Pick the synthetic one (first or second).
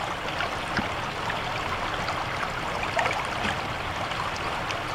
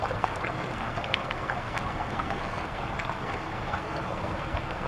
second